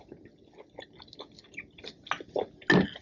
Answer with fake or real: real